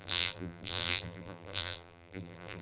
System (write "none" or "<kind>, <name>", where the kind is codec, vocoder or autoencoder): vocoder, BigVGAN v2